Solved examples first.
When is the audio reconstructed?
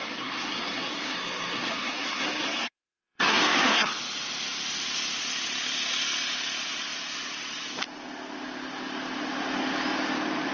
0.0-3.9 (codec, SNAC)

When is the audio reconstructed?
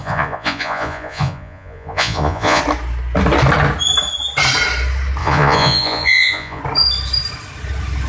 0.0-2.6 (vocoder, Vocos); 5.2-6.6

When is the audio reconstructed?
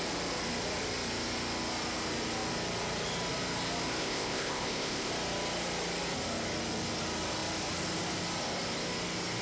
4.0-5.1 (codec, ZipCodec)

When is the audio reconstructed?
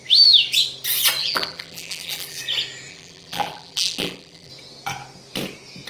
1.2-2.4 (vocoder, BigVGAN v2); 2.9-4.5